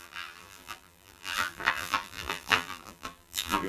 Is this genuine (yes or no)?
no